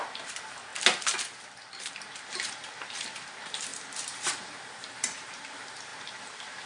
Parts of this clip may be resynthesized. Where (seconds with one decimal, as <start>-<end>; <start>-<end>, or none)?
0.0-0.7; 1.8-6.7